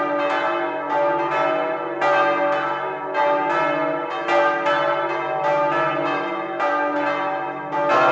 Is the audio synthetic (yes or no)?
no